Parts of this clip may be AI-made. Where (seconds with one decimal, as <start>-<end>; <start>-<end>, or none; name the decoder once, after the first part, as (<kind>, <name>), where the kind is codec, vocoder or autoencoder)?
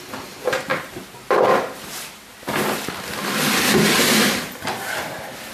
none